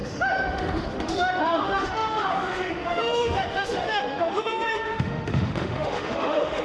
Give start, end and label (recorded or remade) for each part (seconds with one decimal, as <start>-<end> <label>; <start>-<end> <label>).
0.0-6.6 remade